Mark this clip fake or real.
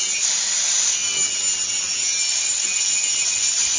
real